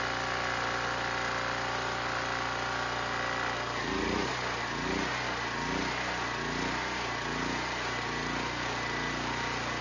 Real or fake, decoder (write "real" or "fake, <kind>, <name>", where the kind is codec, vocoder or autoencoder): real